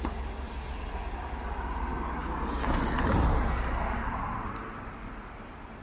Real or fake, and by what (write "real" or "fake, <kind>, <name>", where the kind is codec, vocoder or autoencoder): real